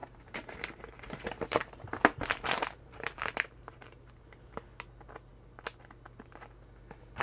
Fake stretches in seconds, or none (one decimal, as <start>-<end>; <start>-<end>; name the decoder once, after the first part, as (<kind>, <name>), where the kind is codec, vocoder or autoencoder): 0.0-4.3 (vocoder, BigVGAN v2)